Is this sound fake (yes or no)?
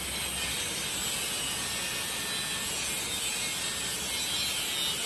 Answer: no